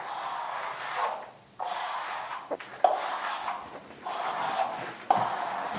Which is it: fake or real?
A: real